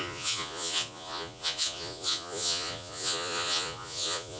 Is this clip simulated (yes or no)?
yes